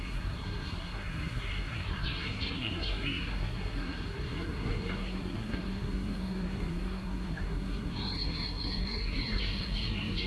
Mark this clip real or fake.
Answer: fake